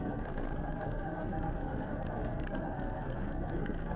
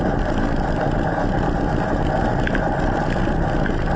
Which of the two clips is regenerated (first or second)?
first